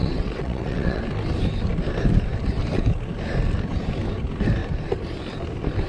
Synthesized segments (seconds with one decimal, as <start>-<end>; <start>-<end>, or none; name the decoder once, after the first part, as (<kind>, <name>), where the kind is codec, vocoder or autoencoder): 0.0-1.0 (vocoder, WaveNeXt)